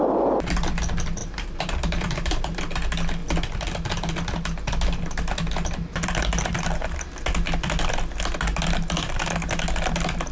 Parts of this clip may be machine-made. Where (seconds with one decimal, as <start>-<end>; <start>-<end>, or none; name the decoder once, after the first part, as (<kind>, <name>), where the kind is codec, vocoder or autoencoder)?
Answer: 1.2-2.6 (vocoder, BigVGAN v2)